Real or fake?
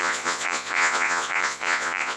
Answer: fake